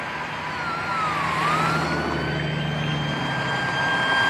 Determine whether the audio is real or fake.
real